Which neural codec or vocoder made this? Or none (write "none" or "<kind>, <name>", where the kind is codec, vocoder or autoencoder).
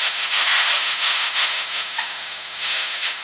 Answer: autoencoder, DAC-VAE